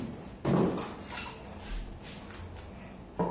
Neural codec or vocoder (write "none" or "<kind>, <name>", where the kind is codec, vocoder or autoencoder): none